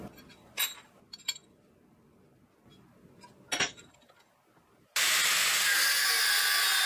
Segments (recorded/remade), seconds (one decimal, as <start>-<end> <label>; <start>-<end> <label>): 0.0-6.9 recorded